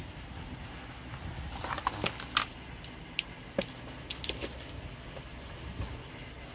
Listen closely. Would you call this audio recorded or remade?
recorded